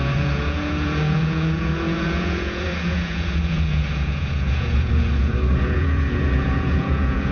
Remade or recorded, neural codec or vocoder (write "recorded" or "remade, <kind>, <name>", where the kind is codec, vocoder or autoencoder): remade, vocoder, Vocos